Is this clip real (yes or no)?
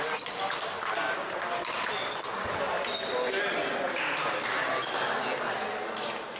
yes